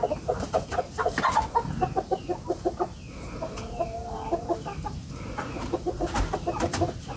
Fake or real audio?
real